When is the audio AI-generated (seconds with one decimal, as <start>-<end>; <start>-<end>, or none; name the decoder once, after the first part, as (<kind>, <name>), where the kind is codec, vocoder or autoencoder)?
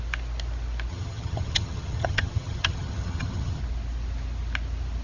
0.9-3.6 (vocoder, HiFi-GAN)